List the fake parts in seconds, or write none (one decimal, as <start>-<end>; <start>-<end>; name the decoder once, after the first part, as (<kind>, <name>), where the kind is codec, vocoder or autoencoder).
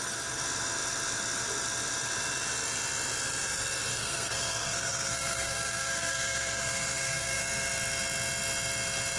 3.9-7.4 (codec, SNAC)